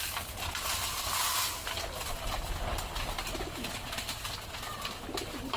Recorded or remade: recorded